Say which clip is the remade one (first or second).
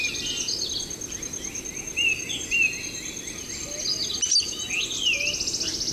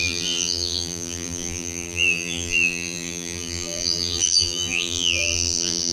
second